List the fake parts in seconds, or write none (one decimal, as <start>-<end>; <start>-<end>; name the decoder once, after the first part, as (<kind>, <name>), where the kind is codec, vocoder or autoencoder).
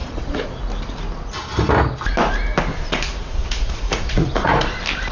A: 0.0-0.6 (vocoder, Vocos); 2.7-4.6